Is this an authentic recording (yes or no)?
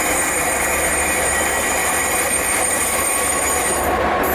no